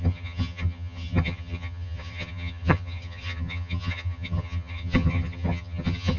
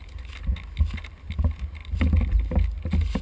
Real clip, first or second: second